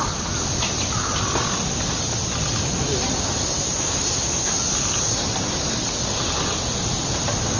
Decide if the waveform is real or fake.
real